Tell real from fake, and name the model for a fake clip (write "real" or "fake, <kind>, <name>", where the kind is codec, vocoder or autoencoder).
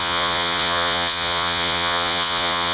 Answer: fake, vocoder, Vocos